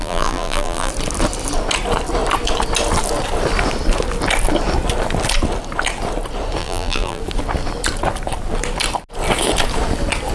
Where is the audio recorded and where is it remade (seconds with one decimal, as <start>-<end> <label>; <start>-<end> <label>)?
0.0-0.9 remade; 0.9-6.6 recorded; 6.6-7.2 remade; 7.2-10.3 recorded